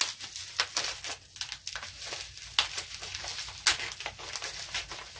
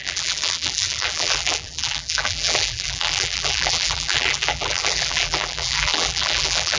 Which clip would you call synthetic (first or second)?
second